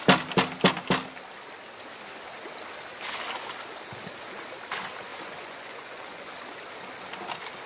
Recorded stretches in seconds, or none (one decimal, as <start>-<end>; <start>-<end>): 0.0-5.1; 6.3-7.7